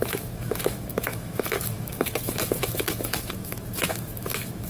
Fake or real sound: fake